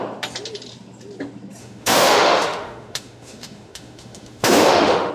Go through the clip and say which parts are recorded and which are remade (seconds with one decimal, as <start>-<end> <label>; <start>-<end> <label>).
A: 0.0-1.6 recorded; 1.6-5.1 remade